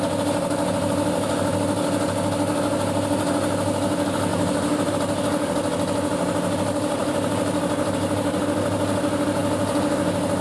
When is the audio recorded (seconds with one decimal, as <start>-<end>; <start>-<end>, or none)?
0.0-4.3; 4.9-7.0; 8.4-10.4